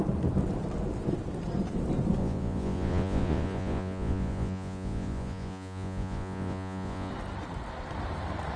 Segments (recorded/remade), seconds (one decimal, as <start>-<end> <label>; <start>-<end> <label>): 0.0-2.2 recorded; 2.2-7.1 remade; 7.1-8.6 recorded